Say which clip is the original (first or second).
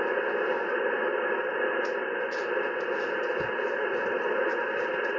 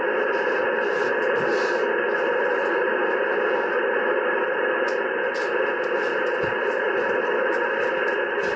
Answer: first